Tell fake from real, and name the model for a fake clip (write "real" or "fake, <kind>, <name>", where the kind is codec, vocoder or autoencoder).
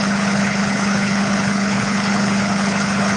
fake, codec, HILCodec